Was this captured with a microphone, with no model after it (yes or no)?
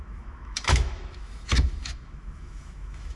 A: no